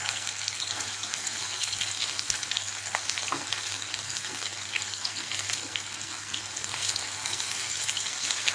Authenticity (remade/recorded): remade